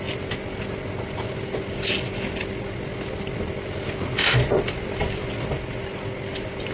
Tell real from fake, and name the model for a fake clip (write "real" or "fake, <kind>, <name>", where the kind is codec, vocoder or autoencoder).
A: real